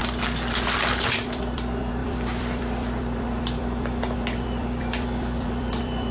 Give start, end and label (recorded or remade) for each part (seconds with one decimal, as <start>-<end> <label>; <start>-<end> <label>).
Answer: 0.0-1.0 recorded; 1.0-6.1 remade